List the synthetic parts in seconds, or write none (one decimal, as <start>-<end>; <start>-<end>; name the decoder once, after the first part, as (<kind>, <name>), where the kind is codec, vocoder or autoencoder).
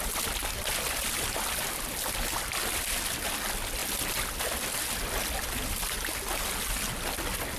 none